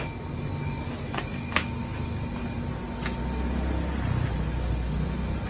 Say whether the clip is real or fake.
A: real